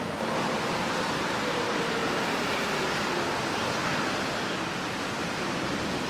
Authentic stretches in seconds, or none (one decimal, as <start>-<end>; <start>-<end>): 0.0-6.1